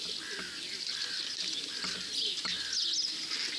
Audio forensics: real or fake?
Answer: real